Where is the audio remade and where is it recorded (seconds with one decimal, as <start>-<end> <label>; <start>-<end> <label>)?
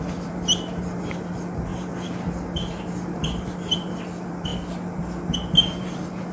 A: 0.0-4.5 remade; 4.5-5.6 recorded; 5.6-6.3 remade